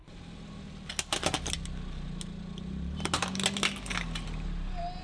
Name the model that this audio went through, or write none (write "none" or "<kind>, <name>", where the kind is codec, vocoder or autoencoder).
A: none